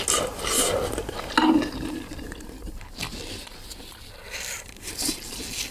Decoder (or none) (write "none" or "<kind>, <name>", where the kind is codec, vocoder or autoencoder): none